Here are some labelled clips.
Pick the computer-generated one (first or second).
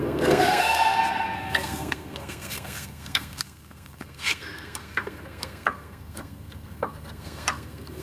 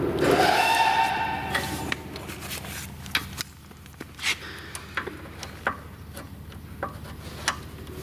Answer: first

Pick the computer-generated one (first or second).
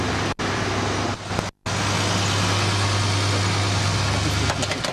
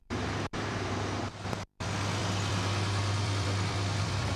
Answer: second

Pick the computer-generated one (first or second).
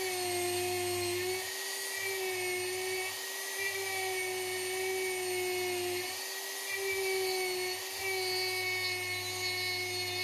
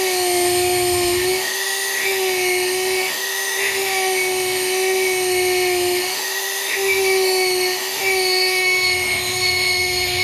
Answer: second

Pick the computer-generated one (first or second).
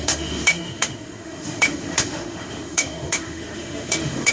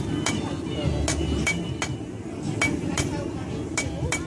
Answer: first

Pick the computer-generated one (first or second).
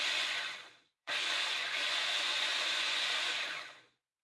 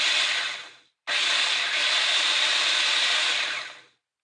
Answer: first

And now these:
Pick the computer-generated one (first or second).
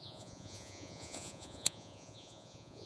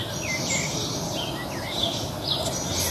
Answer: first